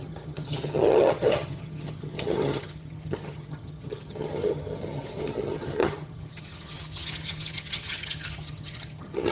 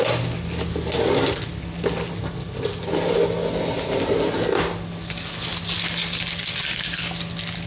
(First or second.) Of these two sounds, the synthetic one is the first